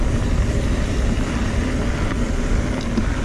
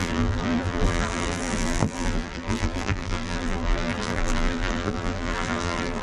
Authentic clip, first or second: first